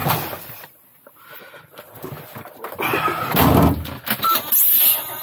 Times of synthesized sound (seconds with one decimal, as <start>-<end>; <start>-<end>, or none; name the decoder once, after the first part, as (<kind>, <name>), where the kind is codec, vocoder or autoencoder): none